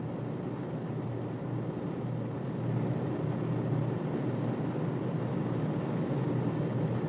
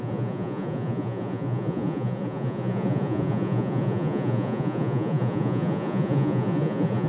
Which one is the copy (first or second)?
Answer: second